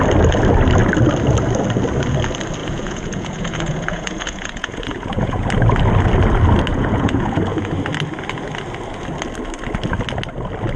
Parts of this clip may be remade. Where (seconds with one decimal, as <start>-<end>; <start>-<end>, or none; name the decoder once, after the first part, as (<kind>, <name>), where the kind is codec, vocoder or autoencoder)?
2.6-5.5 (vocoder, Vocos); 6.7-7.7